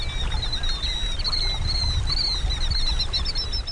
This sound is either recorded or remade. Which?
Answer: recorded